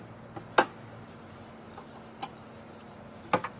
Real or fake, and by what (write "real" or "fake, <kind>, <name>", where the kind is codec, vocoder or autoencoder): real